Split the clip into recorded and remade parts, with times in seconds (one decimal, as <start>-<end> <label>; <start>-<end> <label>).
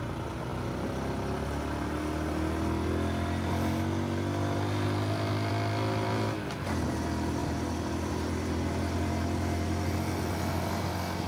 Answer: 0.0-11.3 recorded